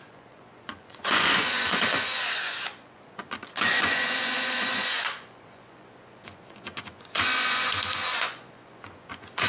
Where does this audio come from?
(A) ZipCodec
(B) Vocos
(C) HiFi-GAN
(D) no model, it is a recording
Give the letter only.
B